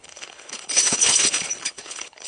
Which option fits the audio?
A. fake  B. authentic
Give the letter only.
A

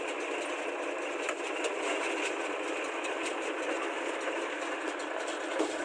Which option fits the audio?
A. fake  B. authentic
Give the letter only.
B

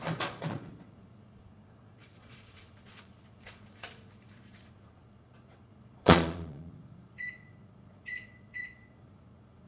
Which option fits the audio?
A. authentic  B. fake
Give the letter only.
B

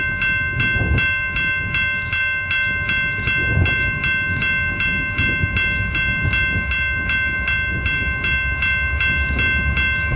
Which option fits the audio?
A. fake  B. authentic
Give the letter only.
B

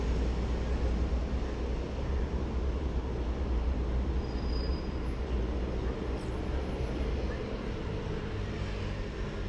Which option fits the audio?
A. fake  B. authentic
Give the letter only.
B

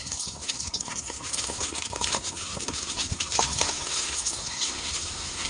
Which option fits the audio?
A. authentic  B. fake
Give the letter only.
B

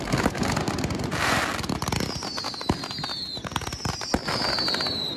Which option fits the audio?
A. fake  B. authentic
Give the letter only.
B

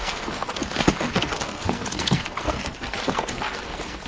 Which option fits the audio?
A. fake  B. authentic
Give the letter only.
A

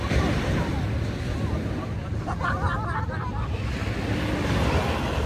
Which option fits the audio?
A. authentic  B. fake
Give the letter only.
A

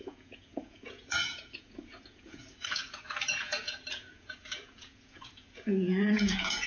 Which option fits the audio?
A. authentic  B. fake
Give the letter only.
B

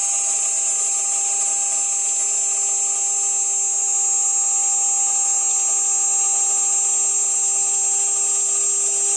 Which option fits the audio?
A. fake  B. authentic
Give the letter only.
B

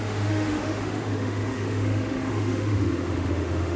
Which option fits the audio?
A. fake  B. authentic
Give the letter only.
A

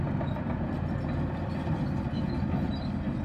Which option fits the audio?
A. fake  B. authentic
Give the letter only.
B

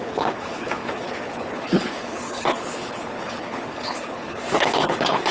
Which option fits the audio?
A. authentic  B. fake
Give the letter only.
B